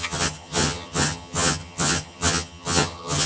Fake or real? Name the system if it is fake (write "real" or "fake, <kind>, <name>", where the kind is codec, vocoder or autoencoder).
fake, vocoder, HiFi-GAN